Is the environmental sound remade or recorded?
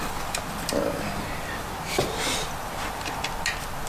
recorded